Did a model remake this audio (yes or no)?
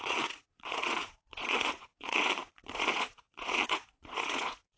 yes